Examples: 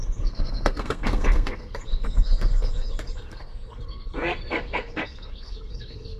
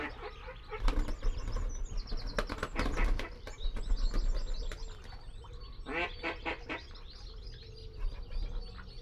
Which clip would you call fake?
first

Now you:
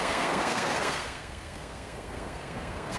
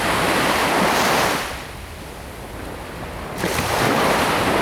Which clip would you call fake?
first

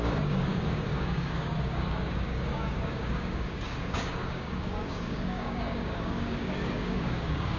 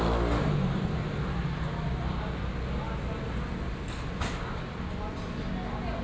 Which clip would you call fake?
first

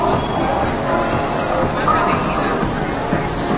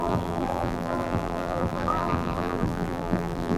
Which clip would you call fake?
second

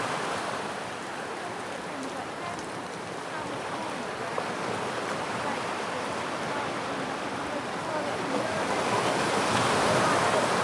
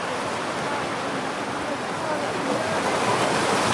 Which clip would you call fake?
first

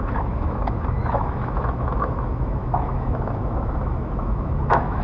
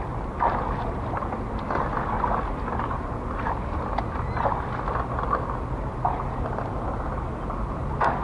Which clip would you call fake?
first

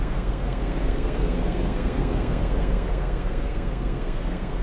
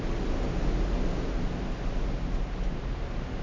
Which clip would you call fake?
first